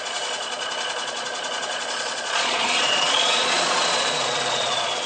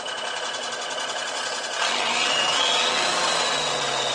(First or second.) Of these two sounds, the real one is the second